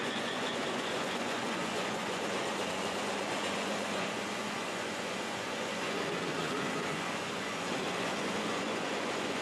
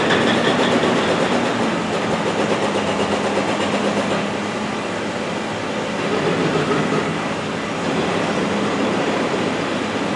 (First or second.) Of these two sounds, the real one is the second